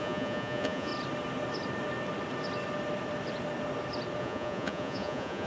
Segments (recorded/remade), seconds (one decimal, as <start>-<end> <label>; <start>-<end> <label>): 0.0-0.9 remade; 0.9-4.2 recorded; 4.2-5.5 remade